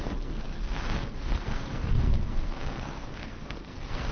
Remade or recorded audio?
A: remade